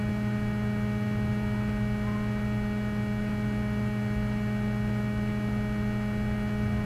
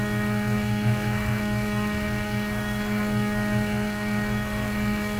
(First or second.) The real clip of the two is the first